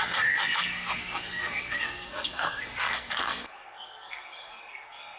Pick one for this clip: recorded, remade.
remade